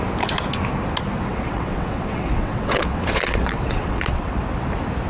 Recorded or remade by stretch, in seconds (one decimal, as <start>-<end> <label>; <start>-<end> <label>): 0.0-1.3 recorded; 1.3-4.4 remade; 4.4-5.1 recorded